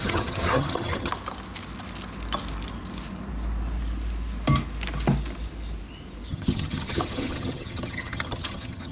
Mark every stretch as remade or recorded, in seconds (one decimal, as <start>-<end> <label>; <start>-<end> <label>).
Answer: 0.0-1.1 remade; 1.1-6.3 recorded; 6.3-8.9 remade